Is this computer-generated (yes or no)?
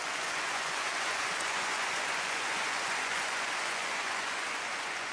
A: yes